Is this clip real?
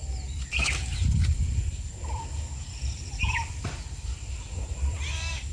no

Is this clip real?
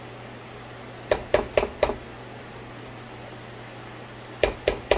yes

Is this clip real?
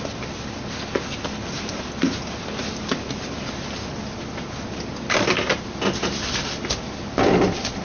yes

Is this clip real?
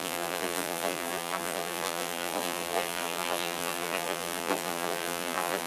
no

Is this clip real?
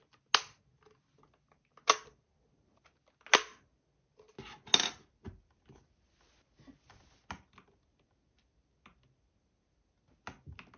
yes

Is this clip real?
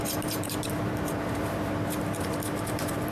no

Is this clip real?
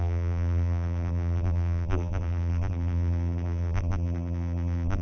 no